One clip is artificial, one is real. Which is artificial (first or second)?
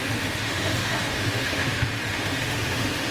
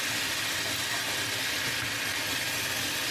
first